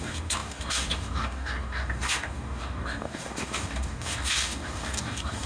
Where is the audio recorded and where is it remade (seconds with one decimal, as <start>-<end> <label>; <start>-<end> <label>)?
0.0-5.5 remade

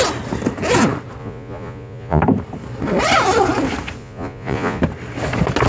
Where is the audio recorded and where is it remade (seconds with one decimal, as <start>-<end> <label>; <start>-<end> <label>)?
0.0-1.2 recorded; 1.2-2.2 remade; 2.2-4.0 recorded; 4.0-4.8 remade; 4.8-5.7 recorded

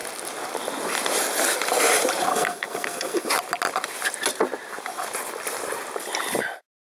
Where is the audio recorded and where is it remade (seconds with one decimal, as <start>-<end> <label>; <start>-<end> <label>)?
0.0-2.3 recorded; 2.3-3.3 remade; 3.3-7.0 recorded

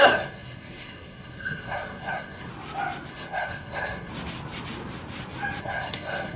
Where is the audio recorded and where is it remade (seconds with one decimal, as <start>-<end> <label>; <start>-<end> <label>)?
0.0-2.5 remade; 2.5-3.1 recorded; 3.1-4.1 remade; 4.1-5.6 recorded; 5.6-6.4 remade